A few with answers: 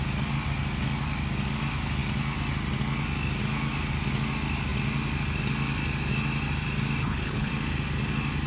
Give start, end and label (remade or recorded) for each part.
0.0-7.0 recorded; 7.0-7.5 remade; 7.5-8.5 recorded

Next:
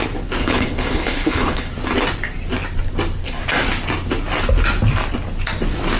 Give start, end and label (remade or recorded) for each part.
0.0-0.4 recorded; 0.4-1.7 remade; 1.7-6.0 recorded

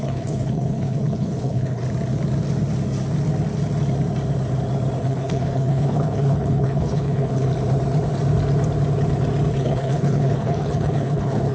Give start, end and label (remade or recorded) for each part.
0.0-1.8 remade; 1.8-5.0 recorded; 5.0-7.5 remade; 7.5-9.5 recorded; 9.5-11.5 remade

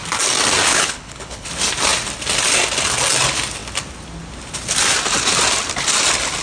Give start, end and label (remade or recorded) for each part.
0.0-0.7 recorded; 0.7-1.5 remade; 1.5-6.4 recorded

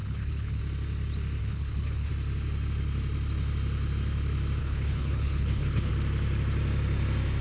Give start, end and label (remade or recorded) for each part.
0.0-0.6 remade; 0.6-1.4 recorded; 1.4-2.1 remade; 2.1-4.6 recorded; 4.6-5.9 remade; 5.9-7.4 recorded